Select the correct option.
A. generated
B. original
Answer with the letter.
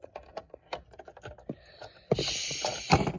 B